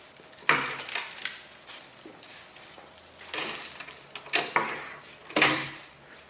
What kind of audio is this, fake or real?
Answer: real